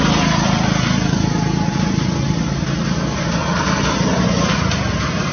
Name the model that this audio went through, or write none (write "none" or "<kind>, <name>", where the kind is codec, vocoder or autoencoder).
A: none